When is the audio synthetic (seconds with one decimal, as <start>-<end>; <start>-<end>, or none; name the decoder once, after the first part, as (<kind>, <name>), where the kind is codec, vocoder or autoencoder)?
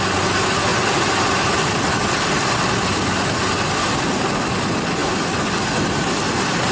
none